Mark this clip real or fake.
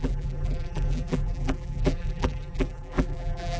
fake